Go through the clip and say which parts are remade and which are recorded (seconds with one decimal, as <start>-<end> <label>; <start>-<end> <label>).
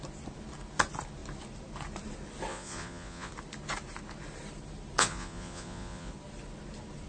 0.0-2.5 recorded; 2.5-3.3 remade; 3.3-5.0 recorded; 5.0-6.1 remade; 6.1-7.1 recorded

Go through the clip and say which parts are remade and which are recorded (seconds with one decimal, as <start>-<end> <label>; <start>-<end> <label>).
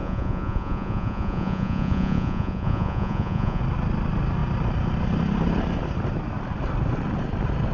0.0-3.6 remade; 3.6-7.7 recorded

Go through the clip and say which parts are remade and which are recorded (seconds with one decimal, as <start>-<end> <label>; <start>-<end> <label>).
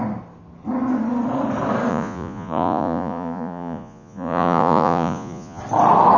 0.0-1.9 recorded; 1.9-5.6 remade; 5.6-6.2 recorded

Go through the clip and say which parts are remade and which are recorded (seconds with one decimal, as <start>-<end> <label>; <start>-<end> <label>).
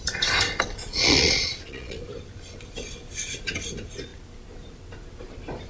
0.0-0.8 recorded; 0.8-2.0 remade; 2.0-5.7 recorded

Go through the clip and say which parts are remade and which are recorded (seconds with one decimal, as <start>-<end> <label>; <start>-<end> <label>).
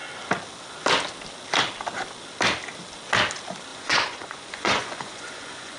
0.0-3.7 recorded; 3.7-5.8 remade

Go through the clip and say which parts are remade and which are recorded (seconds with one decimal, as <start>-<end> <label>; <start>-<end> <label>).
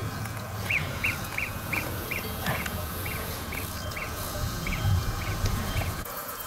0.0-6.5 remade